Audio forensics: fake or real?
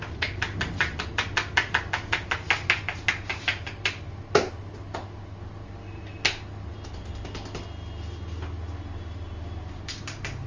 real